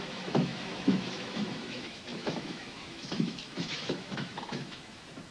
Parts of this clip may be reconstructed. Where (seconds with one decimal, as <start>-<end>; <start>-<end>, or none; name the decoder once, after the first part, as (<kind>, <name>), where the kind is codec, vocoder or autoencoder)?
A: 0.0-5.3 (autoencoder, DAC-VAE)